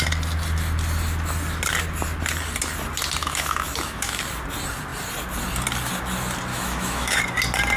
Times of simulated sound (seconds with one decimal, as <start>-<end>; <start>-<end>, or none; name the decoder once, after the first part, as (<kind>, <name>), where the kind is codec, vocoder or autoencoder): 3.2-4.2 (autoencoder, DAC-VAE); 6.5-7.2